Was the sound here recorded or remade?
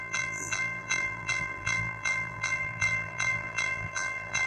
remade